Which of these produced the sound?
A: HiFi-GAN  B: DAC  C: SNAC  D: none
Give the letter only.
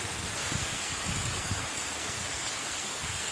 C